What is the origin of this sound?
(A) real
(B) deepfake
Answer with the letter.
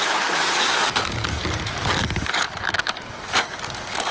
B